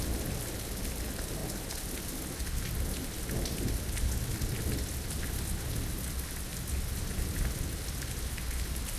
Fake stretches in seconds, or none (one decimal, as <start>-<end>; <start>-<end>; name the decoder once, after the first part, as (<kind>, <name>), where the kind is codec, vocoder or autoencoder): none